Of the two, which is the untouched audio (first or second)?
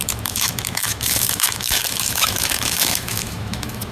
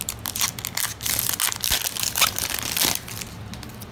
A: second